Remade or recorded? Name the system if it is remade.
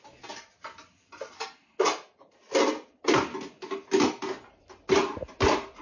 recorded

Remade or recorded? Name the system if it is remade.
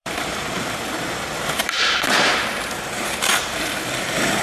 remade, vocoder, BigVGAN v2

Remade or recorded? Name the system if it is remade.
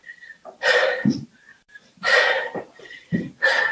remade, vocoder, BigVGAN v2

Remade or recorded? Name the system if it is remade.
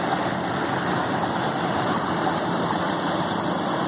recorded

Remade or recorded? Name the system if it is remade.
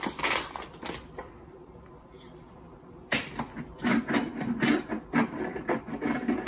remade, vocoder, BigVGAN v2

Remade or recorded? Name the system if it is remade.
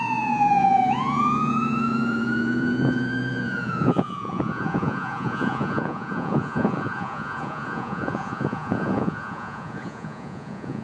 remade, vocoder, Vocos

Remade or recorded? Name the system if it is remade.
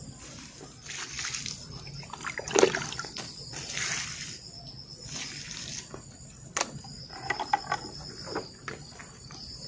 recorded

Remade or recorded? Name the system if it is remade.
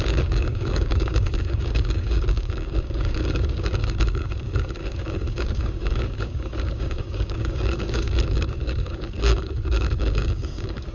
remade, codec, DAC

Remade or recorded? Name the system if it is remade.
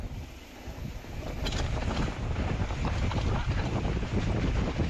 recorded